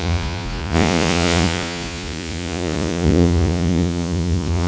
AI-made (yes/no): yes